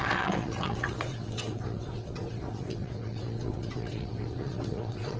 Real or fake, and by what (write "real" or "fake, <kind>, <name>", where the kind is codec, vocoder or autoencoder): fake, vocoder, WaveNeXt